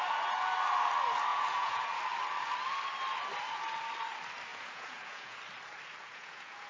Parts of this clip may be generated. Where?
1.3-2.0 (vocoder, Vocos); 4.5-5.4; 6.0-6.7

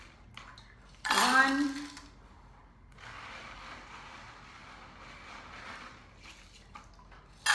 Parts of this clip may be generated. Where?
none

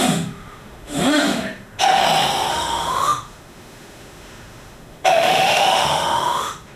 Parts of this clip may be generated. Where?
0.0-2.0 (autoencoder, DAC-VAE); 2.5-6.8

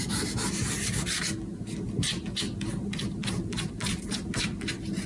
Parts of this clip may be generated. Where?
3.2-5.1 (vocoder, BigVGAN v2)

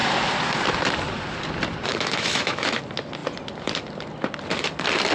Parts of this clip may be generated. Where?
1.9-2.8 (autoencoder, DAC-VAE)

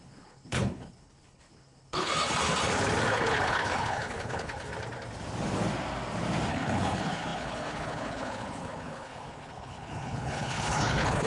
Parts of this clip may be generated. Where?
0.0-2.1 (codec, HILCodec); 3.1-4.7; 6.5-11.3